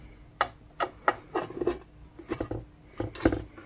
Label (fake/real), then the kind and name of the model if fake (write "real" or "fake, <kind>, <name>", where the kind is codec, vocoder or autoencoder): real